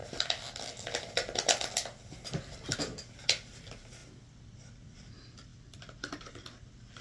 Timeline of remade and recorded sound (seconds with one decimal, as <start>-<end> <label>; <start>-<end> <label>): 0.0-7.0 recorded